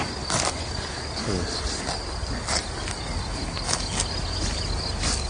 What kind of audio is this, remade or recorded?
recorded